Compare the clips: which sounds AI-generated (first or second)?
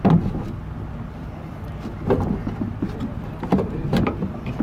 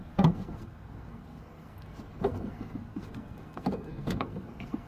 second